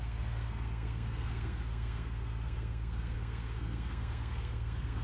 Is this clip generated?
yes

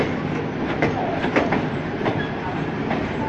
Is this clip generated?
no